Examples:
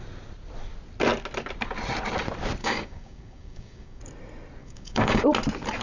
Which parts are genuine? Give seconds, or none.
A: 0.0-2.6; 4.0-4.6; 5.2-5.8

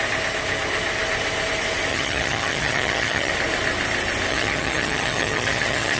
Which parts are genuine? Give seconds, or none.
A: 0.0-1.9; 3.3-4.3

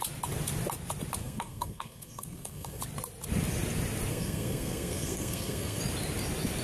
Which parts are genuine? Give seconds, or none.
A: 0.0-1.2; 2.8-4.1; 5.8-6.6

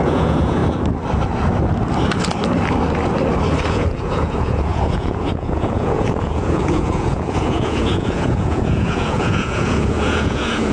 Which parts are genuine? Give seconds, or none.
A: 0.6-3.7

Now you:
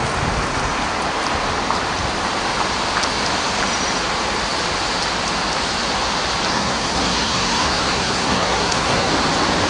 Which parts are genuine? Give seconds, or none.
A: 0.0-6.5; 9.1-9.7

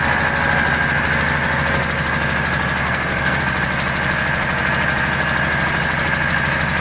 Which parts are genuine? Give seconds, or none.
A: 0.0-2.8; 3.4-6.8